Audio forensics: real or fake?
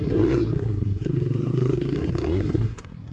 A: fake